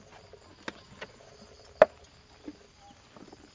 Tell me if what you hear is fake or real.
real